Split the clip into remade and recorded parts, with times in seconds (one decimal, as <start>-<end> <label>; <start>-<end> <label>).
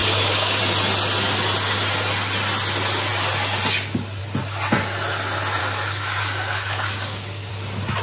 0.0-0.6 remade; 0.6-5.6 recorded; 5.6-7.5 remade; 7.5-8.0 recorded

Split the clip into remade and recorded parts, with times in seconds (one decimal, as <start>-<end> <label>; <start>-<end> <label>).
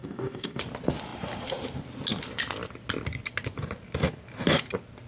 0.0-0.6 remade; 0.6-5.1 recorded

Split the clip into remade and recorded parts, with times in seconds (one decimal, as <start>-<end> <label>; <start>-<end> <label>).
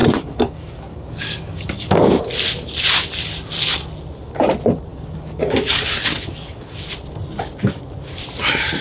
0.0-2.2 remade; 2.2-4.9 recorded; 4.9-6.9 remade; 6.9-8.8 recorded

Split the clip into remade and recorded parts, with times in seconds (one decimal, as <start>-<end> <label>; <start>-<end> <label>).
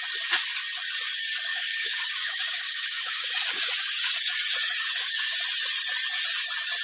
0.0-1.5 recorded; 1.5-5.4 remade; 5.4-6.8 recorded